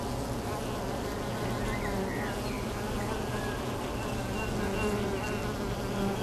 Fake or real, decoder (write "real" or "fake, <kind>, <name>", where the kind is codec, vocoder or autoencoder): real